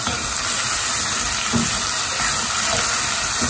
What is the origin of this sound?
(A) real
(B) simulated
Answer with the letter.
A